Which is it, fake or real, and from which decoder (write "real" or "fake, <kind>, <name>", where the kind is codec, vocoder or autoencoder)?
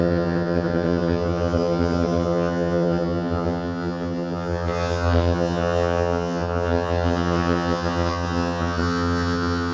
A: fake, vocoder, HiFi-GAN